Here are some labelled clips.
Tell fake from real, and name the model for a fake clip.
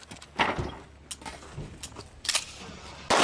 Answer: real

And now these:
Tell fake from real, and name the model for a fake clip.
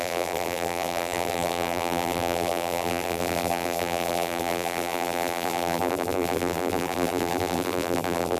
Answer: fake, vocoder, BigVGAN v2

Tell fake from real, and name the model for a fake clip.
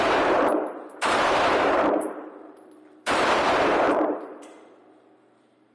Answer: fake, vocoder, BigVGAN v2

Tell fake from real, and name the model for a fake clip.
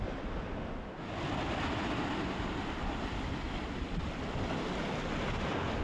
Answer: real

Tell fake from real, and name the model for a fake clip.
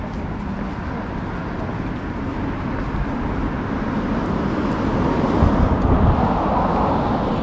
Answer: real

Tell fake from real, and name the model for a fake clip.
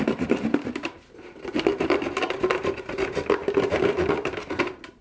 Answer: fake, vocoder, BigVGAN v2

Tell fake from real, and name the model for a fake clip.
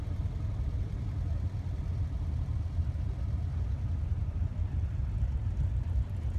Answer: fake, vocoder, BigVGAN v2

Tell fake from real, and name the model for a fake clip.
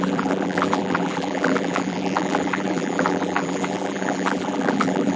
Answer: fake, vocoder, BigVGAN v2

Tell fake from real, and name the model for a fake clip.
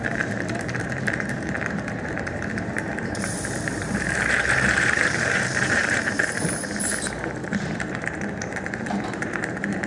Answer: fake, vocoder, BigVGAN v2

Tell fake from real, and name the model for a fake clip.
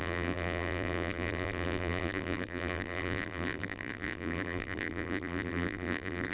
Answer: fake, vocoder, BigVGAN v2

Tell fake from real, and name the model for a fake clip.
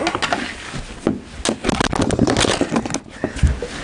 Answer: real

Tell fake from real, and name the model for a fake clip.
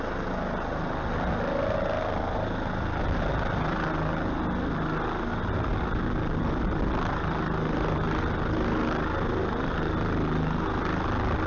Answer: real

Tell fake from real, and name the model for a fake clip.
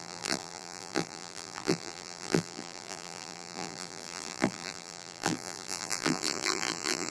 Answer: fake, vocoder, BigVGAN v2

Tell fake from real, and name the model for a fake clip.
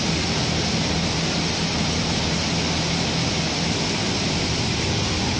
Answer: fake, vocoder, BigVGAN v2